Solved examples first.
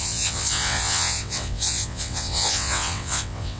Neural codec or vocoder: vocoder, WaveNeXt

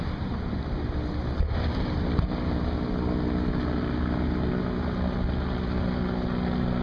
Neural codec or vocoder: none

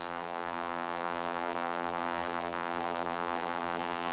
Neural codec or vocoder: vocoder, BigVGAN v2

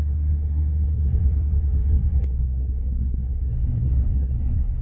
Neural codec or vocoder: codec, SNAC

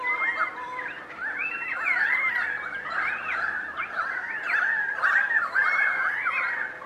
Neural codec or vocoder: none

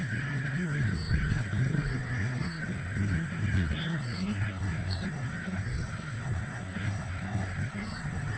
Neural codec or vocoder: codec, SNAC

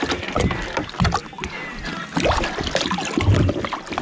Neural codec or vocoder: none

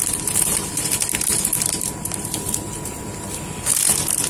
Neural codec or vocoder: vocoder, BigVGAN v2